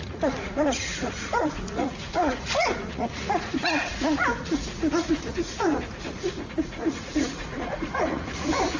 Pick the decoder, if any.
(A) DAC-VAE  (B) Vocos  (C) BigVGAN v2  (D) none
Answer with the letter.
B